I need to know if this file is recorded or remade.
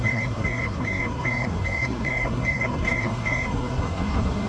remade